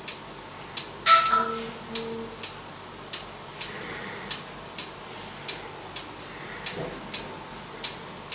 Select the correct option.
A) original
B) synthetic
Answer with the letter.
A